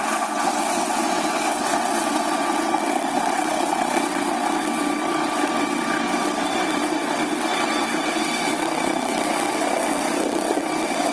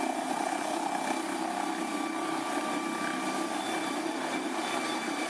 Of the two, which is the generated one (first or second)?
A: first